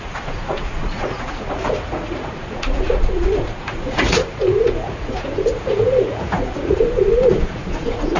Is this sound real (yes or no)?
no